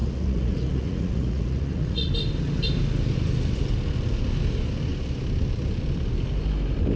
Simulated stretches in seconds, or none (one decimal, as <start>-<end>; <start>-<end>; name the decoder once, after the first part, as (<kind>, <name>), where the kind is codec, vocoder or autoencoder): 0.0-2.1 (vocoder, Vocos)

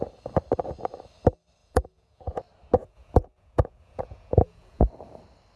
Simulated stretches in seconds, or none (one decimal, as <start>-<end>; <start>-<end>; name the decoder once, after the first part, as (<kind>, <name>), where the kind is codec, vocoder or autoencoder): 1.6-2.4 (vocoder, Vocos); 2.8-4.9

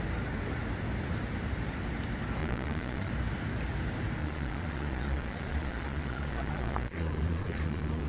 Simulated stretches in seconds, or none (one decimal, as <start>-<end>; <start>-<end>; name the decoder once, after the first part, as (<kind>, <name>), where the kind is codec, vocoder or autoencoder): 2.4-3.1 (vocoder, Vocos); 4.2-8.1

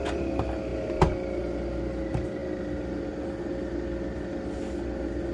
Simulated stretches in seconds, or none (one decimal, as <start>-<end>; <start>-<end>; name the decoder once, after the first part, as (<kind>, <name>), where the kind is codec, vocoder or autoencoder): none

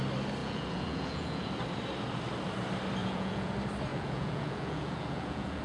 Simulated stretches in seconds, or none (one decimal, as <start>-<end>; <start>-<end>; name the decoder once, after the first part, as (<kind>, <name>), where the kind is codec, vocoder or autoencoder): 0.4-1.5 (vocoder, Vocos); 3.0-3.5; 3.9-5.6

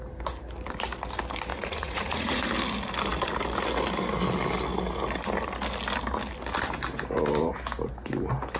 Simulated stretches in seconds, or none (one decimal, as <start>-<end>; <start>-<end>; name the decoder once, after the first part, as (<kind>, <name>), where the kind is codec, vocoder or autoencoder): 1.5-2.4 (vocoder, Vocos)